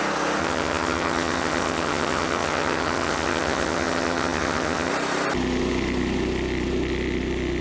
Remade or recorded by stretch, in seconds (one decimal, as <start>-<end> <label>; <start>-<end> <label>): 0.0-0.4 recorded; 0.4-4.9 remade; 4.9-7.6 recorded